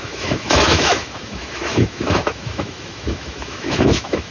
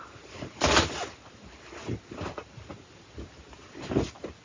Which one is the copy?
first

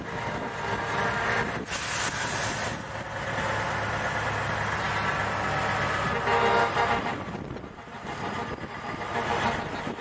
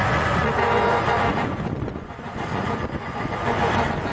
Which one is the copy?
second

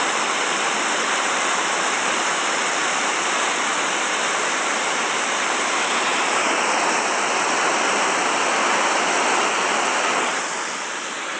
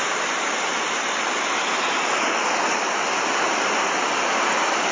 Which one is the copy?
first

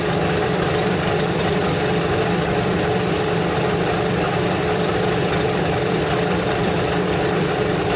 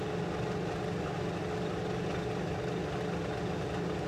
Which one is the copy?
first